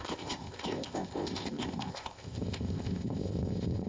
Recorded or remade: remade